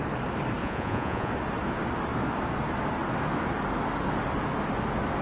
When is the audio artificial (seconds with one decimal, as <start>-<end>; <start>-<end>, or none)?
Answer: 0.6-1.3